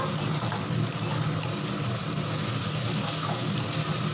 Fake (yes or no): no